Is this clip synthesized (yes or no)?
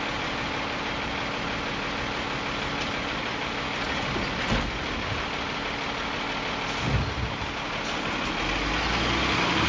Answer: no